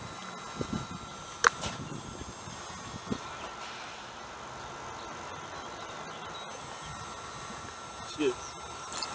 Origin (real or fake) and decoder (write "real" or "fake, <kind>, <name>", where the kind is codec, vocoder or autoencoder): real